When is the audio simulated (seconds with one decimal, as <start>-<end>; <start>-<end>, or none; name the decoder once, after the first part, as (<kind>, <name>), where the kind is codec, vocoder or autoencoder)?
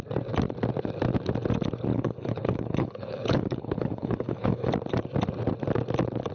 1.9-4.7 (codec, HILCodec)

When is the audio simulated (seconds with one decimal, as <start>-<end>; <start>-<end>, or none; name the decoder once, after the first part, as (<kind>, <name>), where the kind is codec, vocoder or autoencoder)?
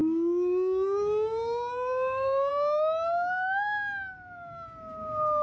0.0-2.5 (codec, DAC)